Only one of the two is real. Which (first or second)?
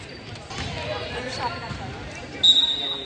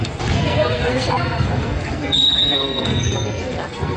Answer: first